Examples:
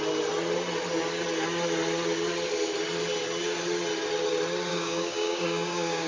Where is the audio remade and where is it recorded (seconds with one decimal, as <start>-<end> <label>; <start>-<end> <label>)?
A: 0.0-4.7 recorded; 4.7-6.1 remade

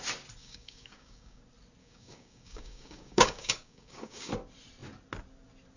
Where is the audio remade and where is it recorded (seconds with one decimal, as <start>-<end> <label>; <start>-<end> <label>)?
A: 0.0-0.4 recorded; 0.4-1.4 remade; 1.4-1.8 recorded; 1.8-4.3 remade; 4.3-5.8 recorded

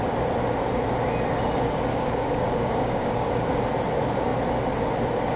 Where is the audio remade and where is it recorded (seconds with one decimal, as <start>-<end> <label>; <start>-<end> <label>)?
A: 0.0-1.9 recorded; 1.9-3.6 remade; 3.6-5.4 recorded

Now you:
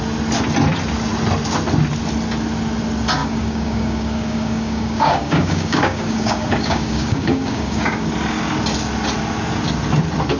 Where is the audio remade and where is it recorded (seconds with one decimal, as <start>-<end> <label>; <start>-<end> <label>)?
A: 0.0-3.2 recorded; 3.2-8.1 remade; 8.1-10.4 recorded